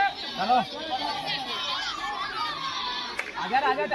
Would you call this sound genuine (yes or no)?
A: yes